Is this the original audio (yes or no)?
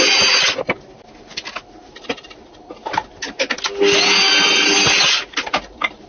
yes